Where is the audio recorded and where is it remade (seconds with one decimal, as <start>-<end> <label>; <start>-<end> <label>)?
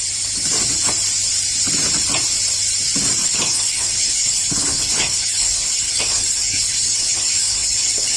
0.0-3.2 recorded; 3.2-8.2 remade